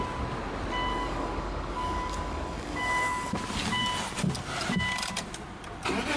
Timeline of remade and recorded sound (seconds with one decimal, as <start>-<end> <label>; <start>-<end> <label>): 0.0-0.9 recorded; 0.9-3.3 remade; 3.3-6.2 recorded